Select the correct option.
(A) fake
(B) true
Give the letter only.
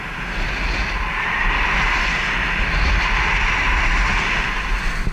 B